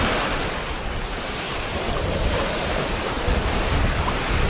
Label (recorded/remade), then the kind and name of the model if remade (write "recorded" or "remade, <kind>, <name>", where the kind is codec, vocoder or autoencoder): recorded